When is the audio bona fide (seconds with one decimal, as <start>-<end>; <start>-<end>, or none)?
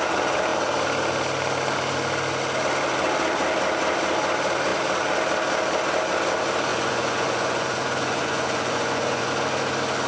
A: 0.0-6.7; 9.3-10.1